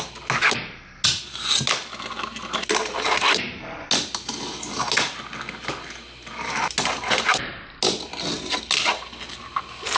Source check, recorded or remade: recorded